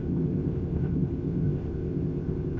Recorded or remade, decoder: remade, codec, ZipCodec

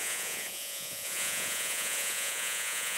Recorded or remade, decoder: remade, vocoder, Vocos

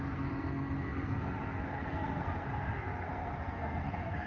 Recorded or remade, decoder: remade, codec, SNAC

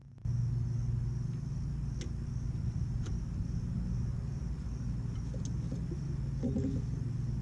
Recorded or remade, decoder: recorded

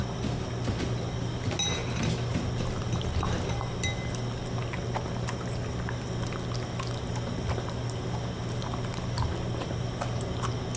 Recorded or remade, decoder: recorded